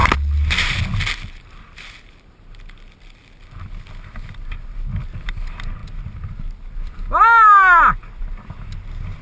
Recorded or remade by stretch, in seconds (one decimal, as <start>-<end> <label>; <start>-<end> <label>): 0.0-9.2 recorded

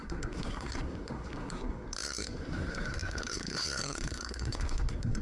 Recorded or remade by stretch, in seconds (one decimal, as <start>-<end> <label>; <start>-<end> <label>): 0.0-5.2 remade